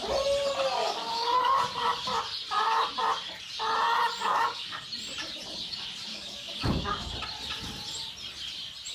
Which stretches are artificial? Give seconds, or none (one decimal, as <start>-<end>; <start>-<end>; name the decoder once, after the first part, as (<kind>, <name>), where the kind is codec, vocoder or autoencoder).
0.8-1.4 (codec, DAC); 4.2-4.8; 6.1-7.1